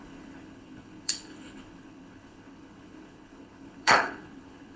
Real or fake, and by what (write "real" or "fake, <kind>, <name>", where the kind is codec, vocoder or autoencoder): fake, codec, HILCodec